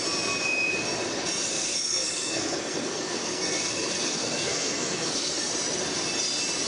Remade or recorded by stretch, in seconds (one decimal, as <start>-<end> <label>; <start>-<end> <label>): 0.0-1.5 recorded; 1.5-5.5 remade; 5.5-6.7 recorded